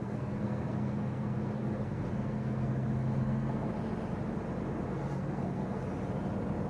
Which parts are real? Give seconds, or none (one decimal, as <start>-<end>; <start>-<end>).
3.7-4.9; 5.8-6.7